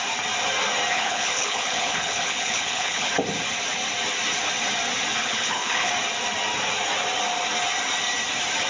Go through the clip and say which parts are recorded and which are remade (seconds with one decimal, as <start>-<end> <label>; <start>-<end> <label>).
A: 0.0-0.9 recorded; 0.9-3.1 remade; 3.1-5.2 recorded; 5.2-5.9 remade; 5.9-8.7 recorded